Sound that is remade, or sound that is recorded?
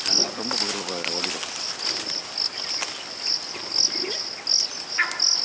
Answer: recorded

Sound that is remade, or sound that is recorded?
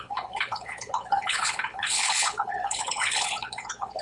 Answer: remade